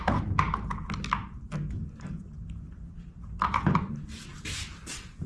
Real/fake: real